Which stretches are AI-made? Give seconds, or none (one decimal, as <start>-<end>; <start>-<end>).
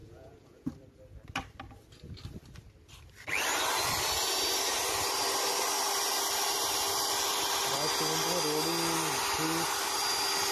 0.0-0.7